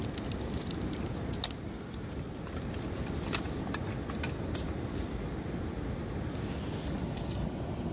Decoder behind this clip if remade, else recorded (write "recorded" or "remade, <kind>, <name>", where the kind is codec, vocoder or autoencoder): recorded